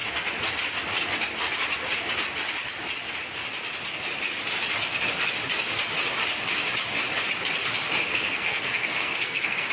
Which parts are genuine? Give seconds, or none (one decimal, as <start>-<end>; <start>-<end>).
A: 0.0-8.1